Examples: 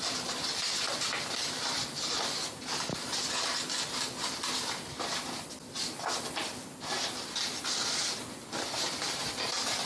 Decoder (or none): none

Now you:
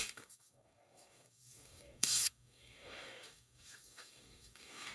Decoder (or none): codec, DAC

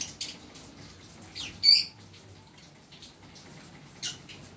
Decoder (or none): none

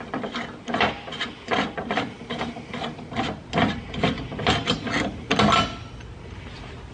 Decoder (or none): none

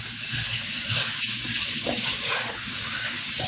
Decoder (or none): codec, DAC